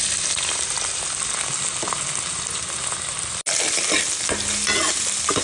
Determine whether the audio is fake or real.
real